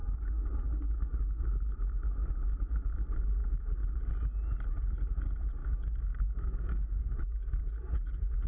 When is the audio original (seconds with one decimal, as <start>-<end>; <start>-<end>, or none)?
1.4-5.6; 7.6-8.5